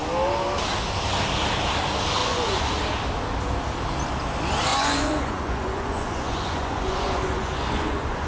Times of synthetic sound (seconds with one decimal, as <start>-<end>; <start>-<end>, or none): 2.2-2.7; 4.7-8.3